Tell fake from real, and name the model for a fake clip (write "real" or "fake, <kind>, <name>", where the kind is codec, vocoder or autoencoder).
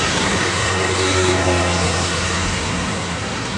fake, codec, SNAC